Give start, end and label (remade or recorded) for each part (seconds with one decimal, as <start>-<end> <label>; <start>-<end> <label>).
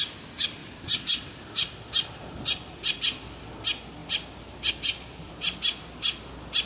0.0-0.6 recorded; 0.6-3.5 remade; 3.5-4.0 recorded; 4.0-5.3 remade; 5.3-6.7 recorded